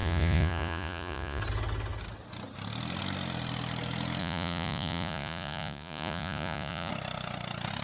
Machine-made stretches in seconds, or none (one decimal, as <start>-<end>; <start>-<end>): 0.0-1.4; 4.2-6.9